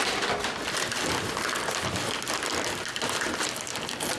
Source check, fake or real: real